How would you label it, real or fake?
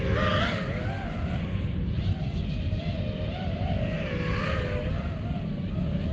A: real